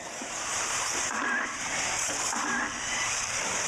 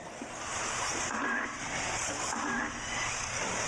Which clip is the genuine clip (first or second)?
second